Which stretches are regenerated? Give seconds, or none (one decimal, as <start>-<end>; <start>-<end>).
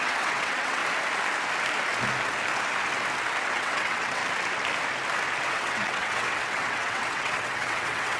0.0-0.8; 3.4-4.2; 5.5-8.2